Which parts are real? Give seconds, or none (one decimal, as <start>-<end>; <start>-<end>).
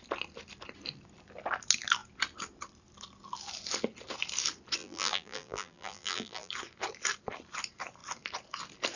0.0-4.8; 6.5-9.0